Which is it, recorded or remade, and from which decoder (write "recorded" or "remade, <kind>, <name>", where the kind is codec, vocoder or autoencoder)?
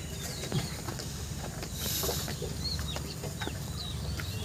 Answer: remade, vocoder, BigVGAN v2